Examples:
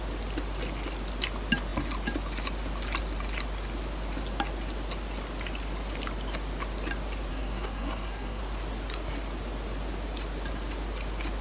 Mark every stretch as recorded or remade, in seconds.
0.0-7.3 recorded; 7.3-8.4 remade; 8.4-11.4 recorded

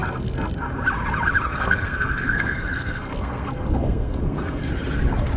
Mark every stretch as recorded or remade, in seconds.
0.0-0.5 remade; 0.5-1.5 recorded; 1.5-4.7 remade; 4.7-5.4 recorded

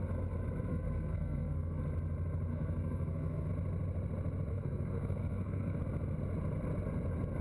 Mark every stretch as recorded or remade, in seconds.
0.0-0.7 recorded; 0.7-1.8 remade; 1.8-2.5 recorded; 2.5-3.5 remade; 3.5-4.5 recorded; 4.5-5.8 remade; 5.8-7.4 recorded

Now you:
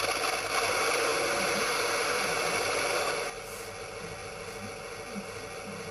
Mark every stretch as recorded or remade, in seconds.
0.0-5.9 recorded